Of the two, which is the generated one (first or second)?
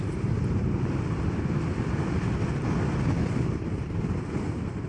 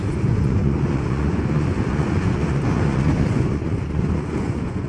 second